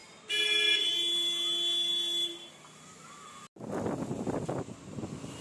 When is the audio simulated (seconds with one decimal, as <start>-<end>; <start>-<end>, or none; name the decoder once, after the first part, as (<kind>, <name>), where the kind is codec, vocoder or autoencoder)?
none

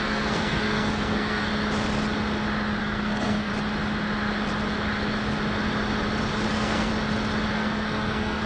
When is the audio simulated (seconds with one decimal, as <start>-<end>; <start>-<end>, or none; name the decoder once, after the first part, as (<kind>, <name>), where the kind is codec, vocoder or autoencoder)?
0.0-1.5 (codec, SNAC); 2.8-3.5; 6.5-6.9; 7.5-8.5

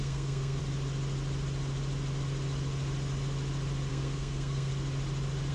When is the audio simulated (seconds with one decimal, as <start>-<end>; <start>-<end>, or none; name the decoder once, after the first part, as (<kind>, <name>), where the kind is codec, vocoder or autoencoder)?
0.0-0.6 (codec, SNAC); 3.9-4.7

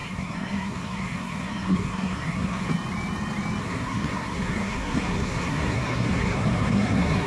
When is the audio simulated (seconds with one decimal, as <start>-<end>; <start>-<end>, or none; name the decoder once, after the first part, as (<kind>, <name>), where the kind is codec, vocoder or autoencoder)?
0.0-2.7 (codec, SNAC); 3.6-7.3